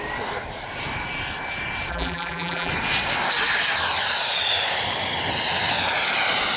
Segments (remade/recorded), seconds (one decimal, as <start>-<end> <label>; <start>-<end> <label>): 0.0-1.9 recorded; 1.9-2.7 remade; 2.7-6.6 recorded